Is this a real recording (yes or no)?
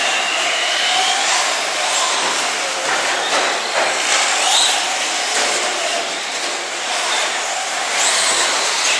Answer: yes